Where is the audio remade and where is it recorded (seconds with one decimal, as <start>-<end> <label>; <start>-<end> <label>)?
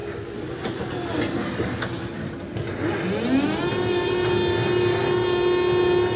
0.0-6.2 recorded